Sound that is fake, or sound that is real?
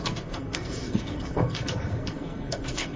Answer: fake